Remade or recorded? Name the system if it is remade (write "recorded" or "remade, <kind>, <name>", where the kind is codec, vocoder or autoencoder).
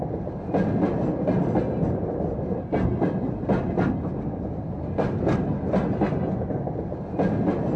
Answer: recorded